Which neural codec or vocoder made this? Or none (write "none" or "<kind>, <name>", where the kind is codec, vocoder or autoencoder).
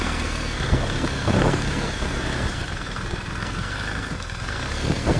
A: codec, SNAC